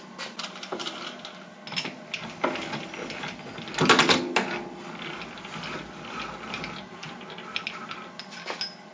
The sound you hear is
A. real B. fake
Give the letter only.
A